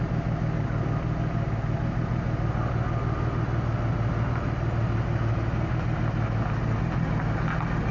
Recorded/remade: recorded